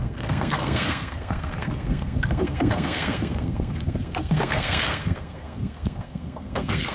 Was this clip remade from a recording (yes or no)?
yes